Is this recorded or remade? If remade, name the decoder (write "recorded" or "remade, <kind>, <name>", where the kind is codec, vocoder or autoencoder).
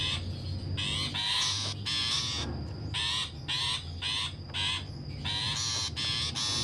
recorded